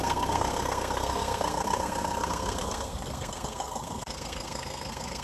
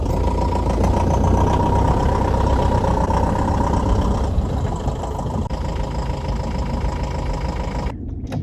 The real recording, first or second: second